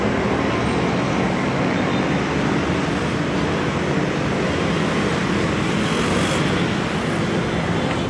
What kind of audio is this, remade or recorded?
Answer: recorded